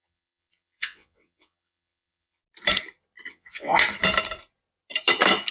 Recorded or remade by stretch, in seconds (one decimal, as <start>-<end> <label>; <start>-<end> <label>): 0.0-2.4 remade; 2.4-3.3 recorded; 3.3-3.7 remade; 3.7-5.5 recorded